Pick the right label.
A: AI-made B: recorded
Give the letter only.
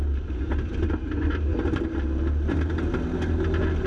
B